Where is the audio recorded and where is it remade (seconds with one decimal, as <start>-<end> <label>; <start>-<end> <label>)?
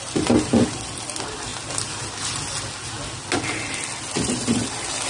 0.0-1.5 remade; 1.5-4.0 recorded; 4.0-5.1 remade